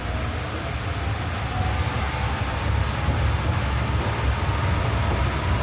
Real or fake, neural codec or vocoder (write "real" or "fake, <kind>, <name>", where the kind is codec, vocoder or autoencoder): real